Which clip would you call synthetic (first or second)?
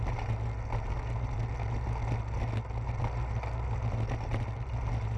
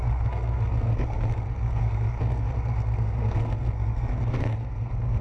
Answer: second